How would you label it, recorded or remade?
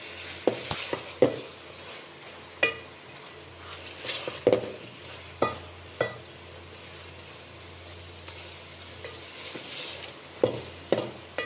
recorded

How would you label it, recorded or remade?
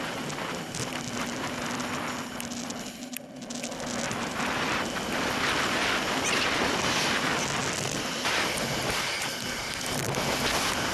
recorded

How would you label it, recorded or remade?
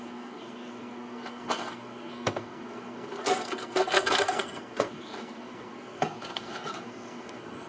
remade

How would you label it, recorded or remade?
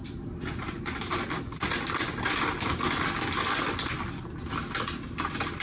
recorded